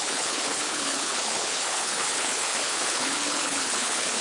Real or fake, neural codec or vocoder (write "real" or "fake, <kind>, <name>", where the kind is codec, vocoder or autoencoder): fake, codec, HILCodec